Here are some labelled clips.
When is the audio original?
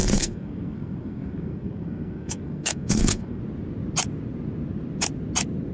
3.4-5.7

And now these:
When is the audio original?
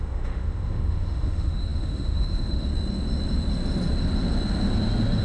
2.7-5.2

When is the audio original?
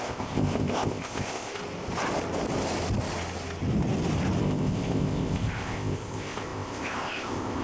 1.6-4.4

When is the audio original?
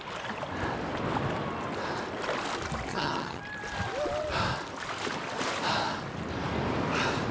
0.0-2.9; 3.4-7.3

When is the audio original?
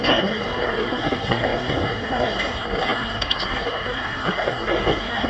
none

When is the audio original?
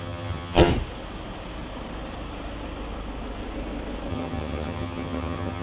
0.7-4.1